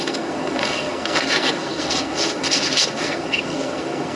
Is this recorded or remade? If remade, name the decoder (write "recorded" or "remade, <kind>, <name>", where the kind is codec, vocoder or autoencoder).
remade, codec, SNAC